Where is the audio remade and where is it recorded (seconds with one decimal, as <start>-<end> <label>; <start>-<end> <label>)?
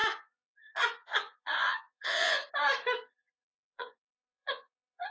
0.0-2.4 remade; 2.4-3.2 recorded; 3.2-5.1 remade